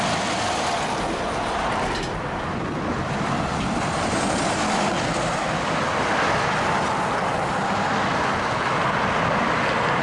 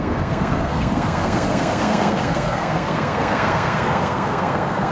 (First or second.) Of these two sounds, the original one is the first